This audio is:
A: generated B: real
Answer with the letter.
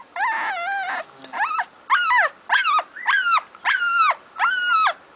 B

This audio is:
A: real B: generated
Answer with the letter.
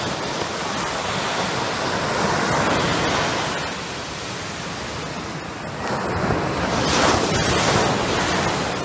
A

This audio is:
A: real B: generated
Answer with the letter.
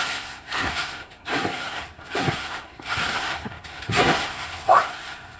B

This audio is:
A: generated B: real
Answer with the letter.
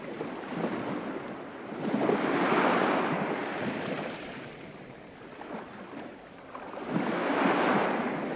A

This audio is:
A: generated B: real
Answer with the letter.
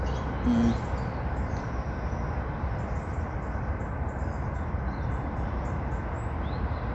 B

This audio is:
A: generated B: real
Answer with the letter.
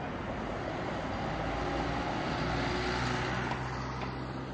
B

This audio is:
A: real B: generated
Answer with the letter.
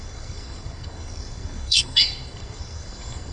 B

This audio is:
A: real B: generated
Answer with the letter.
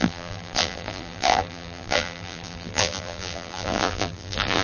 B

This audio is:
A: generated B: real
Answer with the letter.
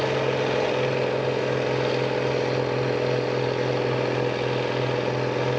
B